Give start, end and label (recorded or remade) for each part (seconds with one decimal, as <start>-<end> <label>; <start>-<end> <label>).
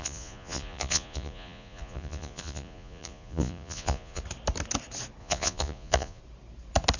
0.0-4.2 remade; 4.2-5.2 recorded; 5.2-6.2 remade; 6.2-7.0 recorded